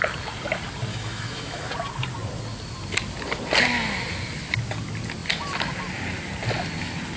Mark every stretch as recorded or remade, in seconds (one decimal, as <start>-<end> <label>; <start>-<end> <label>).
0.0-0.9 recorded; 0.9-1.7 remade; 1.7-7.2 recorded

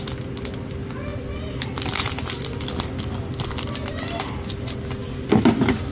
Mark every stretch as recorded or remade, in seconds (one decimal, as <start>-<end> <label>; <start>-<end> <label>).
0.0-5.9 recorded

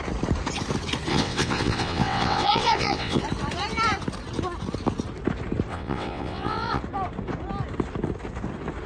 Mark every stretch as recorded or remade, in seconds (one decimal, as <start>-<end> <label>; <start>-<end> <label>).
0.0-1.1 recorded; 1.1-3.2 remade; 3.2-5.7 recorded; 5.7-6.8 remade; 6.8-8.9 recorded

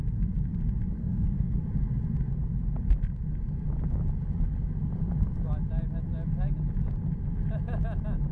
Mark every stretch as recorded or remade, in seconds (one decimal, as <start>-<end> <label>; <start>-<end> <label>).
0.0-1.0 recorded; 1.0-1.6 remade; 1.6-8.3 recorded